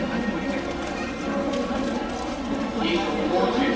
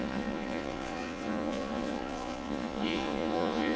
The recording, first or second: first